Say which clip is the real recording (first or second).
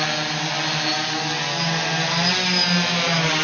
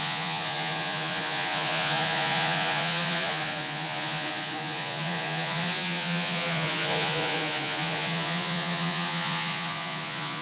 first